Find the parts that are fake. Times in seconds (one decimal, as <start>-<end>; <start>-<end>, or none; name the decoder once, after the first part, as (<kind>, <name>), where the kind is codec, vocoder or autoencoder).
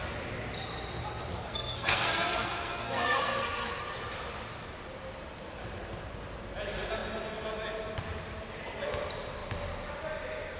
1.3-3.8 (codec, SNAC)